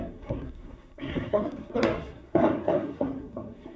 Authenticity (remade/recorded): remade